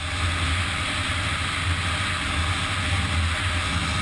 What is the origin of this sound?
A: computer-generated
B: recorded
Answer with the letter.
B